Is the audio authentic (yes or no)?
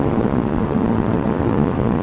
no